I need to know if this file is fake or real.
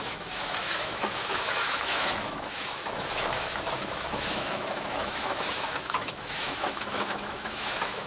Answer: fake